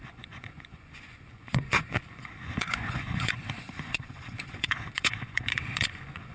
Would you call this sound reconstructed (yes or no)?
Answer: yes